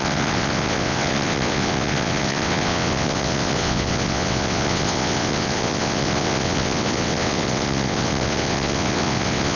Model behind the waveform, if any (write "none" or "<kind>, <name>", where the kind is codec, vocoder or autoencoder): vocoder, WaveNeXt